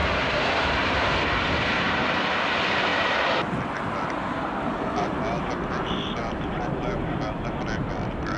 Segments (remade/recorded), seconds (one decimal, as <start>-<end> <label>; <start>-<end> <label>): 0.0-0.8 remade; 0.8-8.4 recorded